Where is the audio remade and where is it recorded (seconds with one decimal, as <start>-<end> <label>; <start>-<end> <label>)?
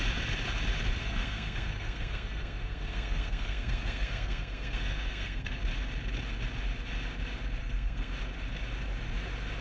0.0-1.0 recorded; 1.0-5.6 remade; 5.6-7.6 recorded; 7.6-8.1 remade; 8.1-9.6 recorded